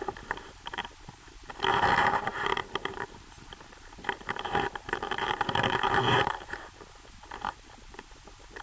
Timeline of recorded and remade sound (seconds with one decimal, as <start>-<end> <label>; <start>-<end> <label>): 0.0-8.6 remade